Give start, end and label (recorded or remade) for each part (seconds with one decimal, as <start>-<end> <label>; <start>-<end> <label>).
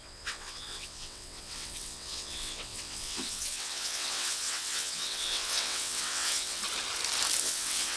0.0-6.6 remade; 6.6-7.4 recorded; 7.4-8.0 remade